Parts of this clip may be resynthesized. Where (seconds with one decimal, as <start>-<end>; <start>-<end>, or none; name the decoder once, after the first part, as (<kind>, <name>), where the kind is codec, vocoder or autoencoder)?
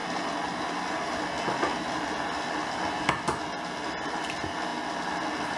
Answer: none